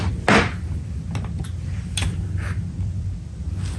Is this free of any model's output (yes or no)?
yes